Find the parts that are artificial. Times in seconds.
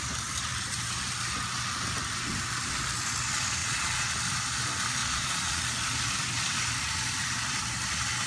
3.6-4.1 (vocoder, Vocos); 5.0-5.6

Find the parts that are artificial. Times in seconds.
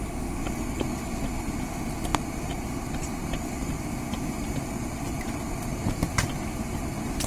none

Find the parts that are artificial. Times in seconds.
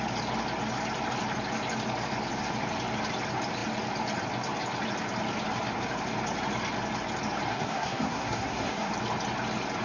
7.5-8.9 (codec, SNAC)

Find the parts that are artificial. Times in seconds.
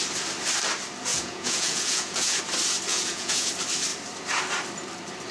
1.1-2.4 (vocoder, Vocos); 2.9-3.5